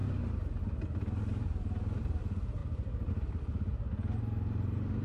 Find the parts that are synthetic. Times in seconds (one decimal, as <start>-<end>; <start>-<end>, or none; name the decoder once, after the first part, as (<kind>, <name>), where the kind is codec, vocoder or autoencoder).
0.0-0.6 (vocoder, BigVGAN v2); 2.6-3.1